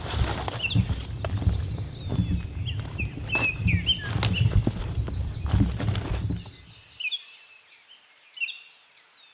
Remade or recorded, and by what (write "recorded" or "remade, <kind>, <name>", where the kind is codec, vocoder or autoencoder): recorded